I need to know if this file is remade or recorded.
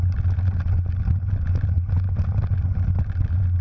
recorded